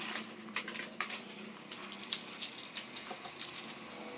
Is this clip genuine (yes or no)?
yes